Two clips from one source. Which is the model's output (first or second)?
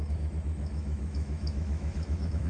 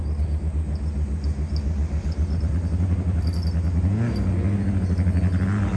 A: first